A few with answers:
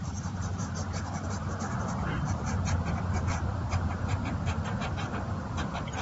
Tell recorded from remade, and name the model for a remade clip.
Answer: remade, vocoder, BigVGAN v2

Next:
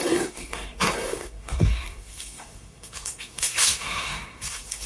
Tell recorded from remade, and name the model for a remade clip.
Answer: remade, codec, SNAC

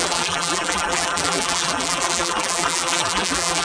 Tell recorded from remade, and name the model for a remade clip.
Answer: remade, vocoder, BigVGAN v2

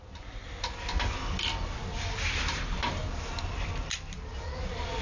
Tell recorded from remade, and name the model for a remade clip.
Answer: recorded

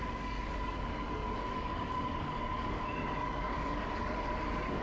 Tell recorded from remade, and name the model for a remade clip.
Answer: remade, codec, DAC